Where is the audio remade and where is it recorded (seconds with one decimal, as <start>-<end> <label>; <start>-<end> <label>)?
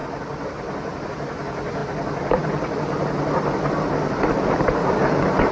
0.0-5.5 recorded